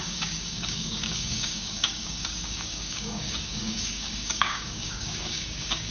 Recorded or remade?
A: remade